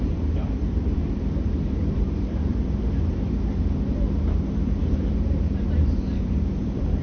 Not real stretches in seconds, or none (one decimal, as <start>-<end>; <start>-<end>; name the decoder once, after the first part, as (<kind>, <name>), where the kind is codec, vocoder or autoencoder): 0.0-0.9 (vocoder, BigVGAN v2); 1.5-7.0

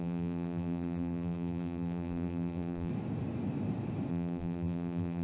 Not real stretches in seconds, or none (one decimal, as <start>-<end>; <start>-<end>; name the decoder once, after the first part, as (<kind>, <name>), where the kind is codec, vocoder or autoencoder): 0.0-2.9 (vocoder, BigVGAN v2); 4.1-5.2

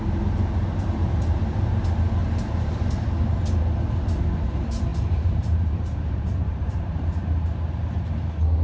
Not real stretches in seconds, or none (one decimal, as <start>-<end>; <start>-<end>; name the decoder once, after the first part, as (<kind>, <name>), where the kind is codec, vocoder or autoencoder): 2.2-2.9 (vocoder, BigVGAN v2); 4.9-7.7

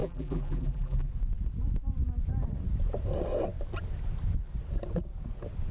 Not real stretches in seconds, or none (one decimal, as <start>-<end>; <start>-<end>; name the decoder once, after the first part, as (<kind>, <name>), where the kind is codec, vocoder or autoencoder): 0.0-1.1 (vocoder, BigVGAN v2)

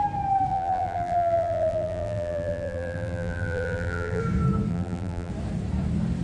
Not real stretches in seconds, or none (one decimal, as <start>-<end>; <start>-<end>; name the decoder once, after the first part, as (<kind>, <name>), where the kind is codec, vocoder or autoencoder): 0.5-4.2 (vocoder, BigVGAN v2); 4.7-5.3